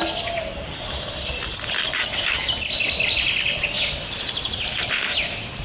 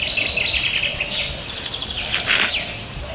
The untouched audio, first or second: second